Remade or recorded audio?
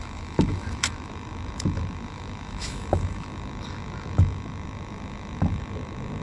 remade